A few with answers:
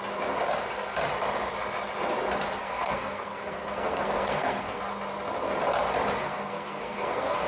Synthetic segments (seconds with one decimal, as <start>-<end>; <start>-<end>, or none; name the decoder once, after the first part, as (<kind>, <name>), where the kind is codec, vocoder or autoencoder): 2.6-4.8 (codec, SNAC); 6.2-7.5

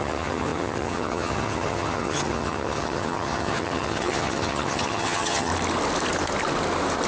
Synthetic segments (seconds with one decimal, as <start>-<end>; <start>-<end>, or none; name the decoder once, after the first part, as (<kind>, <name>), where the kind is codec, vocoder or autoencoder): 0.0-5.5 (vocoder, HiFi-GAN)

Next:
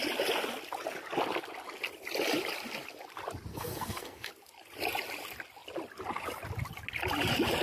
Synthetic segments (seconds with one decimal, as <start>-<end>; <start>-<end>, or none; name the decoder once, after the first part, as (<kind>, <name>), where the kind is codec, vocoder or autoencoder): 3.5-4.3 (codec, SNAC)

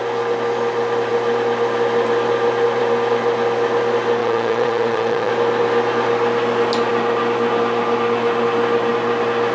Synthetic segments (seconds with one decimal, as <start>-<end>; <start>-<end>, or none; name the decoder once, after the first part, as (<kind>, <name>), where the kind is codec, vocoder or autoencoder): 4.2-5.3 (vocoder, Vocos)